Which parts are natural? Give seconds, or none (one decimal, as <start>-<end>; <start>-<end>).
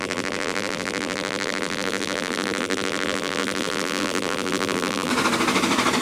5.1-6.0